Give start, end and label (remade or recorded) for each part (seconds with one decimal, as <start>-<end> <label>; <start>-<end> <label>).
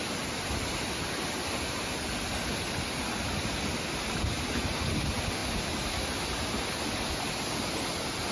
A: 0.0-8.3 recorded